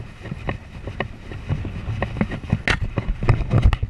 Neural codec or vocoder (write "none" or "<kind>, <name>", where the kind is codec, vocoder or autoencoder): none